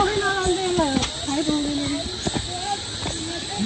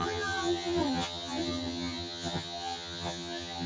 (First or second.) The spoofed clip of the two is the second